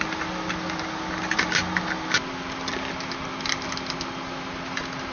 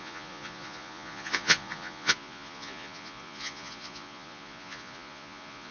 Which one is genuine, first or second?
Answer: first